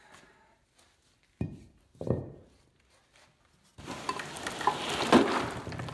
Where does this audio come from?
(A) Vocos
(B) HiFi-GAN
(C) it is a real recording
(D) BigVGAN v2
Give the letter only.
C